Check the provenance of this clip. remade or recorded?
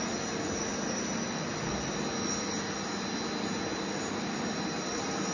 recorded